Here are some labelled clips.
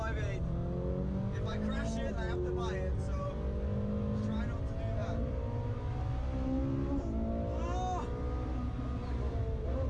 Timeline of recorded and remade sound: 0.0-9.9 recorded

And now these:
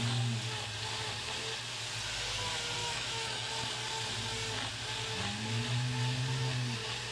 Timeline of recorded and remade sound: 0.0-2.8 recorded; 2.8-3.5 remade; 3.5-7.1 recorded